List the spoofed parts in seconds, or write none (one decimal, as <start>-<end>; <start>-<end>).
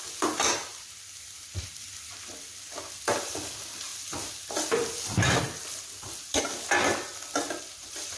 none